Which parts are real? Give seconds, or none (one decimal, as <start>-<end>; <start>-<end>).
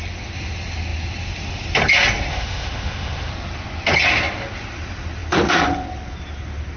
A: 0.0-2.3; 3.3-6.8